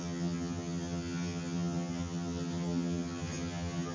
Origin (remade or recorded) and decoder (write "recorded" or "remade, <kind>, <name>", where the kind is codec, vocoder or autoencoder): remade, vocoder, HiFi-GAN